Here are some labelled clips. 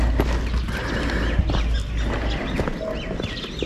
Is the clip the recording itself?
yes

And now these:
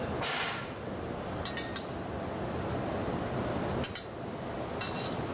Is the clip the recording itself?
yes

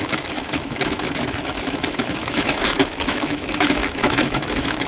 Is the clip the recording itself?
no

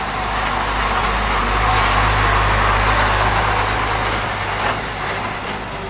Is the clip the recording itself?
yes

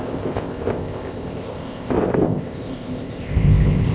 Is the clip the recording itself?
no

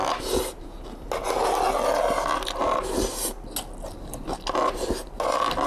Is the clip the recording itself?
yes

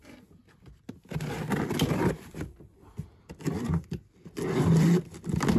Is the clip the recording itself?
yes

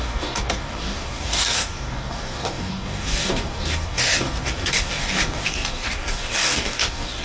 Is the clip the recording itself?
no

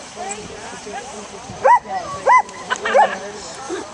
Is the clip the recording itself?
no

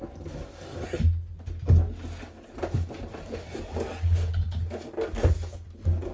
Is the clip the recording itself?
yes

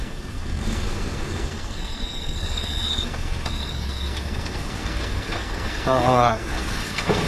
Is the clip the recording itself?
no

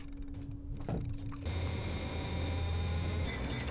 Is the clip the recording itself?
yes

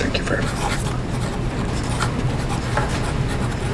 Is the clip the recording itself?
yes